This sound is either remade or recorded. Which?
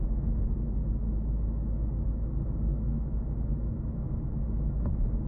remade